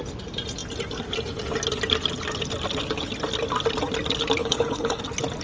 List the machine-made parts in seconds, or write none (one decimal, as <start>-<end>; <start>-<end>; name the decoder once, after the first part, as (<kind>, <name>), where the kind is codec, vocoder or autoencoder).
4.4-5.0 (codec, HILCodec)